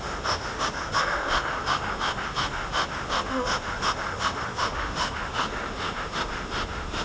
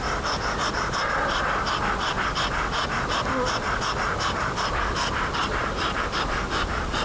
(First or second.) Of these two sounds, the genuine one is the second